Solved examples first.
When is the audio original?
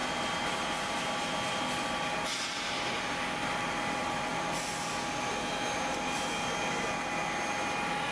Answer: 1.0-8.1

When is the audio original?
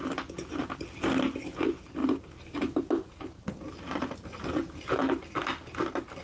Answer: 0.0-2.0; 4.5-6.2